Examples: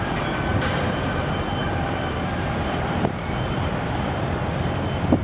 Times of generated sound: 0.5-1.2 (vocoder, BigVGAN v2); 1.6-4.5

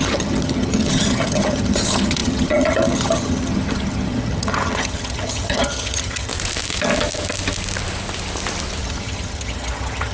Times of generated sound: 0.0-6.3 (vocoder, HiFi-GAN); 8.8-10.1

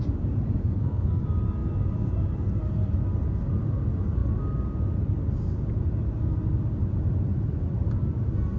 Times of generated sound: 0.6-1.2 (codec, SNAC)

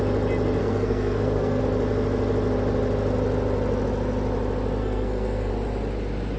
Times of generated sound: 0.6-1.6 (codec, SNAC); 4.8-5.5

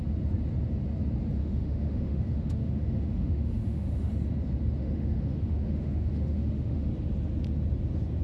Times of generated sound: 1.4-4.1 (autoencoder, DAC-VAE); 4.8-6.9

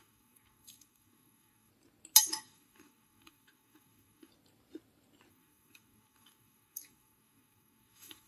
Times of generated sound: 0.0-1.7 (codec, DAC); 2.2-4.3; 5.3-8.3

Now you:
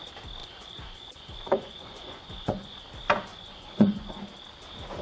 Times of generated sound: 0.4-2.8 (vocoder, Vocos); 3.3-4.2